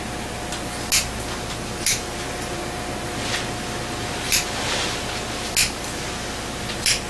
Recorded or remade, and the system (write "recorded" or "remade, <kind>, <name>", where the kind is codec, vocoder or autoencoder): recorded